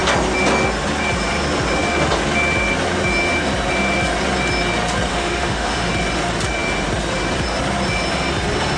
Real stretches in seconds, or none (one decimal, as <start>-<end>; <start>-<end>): 0.0-5.1; 5.9-8.8